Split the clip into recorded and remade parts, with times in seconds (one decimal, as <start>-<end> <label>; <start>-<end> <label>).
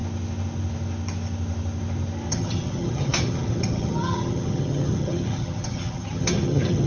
0.0-2.3 recorded; 2.3-6.9 remade